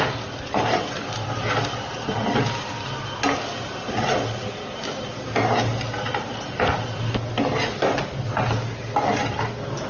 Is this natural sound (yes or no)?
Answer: yes